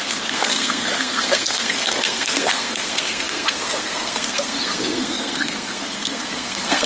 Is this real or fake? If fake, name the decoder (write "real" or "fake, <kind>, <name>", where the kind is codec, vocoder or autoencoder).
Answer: fake, codec, SNAC